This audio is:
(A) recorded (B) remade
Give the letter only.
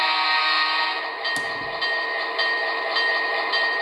A